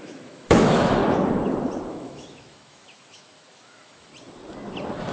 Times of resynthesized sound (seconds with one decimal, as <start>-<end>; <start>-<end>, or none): 0.0-1.0; 1.9-4.1